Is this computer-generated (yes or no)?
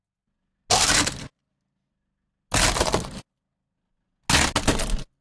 no